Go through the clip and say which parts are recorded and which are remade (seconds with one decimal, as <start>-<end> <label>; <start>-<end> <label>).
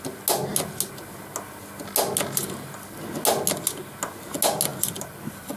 0.0-4.7 recorded; 4.7-5.6 remade